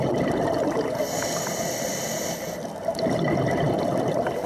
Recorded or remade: recorded